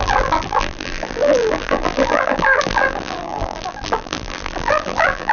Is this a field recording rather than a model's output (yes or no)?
no